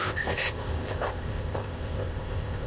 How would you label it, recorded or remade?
remade